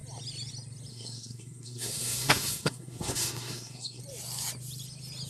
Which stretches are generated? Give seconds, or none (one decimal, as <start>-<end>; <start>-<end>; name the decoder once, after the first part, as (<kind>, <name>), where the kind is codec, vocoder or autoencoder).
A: 0.9-4.0 (codec, SNAC)